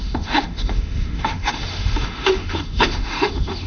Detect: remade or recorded remade